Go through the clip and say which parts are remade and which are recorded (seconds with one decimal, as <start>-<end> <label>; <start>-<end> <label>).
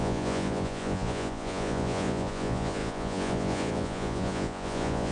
0.0-5.1 remade